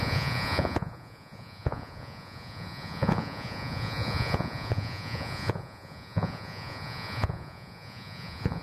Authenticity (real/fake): fake